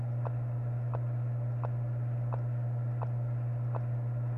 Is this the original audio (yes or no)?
yes